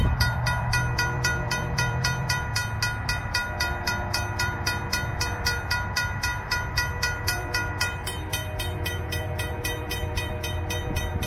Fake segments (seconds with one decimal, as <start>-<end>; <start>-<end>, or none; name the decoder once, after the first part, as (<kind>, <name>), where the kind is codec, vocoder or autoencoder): 0.0-2.6 (vocoder, BigVGAN v2); 3.2-11.3